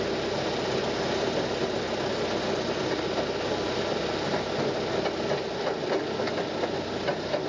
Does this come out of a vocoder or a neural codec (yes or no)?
no